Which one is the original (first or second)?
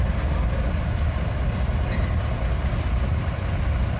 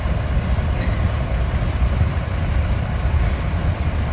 first